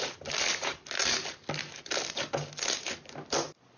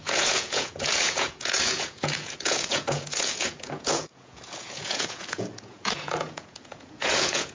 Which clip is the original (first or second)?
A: first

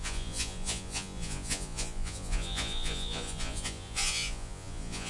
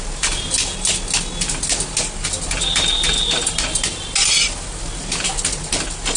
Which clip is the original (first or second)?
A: second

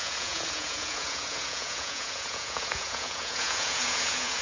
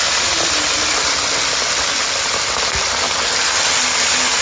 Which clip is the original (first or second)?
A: second